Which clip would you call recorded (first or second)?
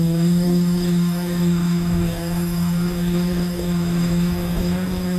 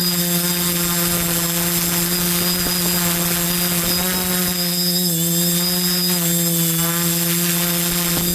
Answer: second